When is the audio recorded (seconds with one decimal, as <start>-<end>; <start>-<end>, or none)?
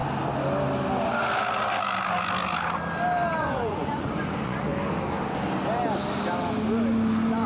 0.0-3.4; 4.7-7.5